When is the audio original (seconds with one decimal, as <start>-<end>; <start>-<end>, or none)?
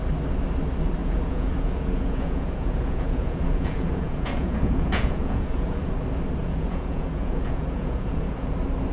0.0-1.0; 5.9-6.4; 8.5-8.9